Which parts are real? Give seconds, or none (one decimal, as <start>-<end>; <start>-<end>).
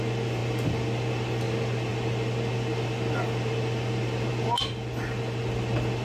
0.0-6.0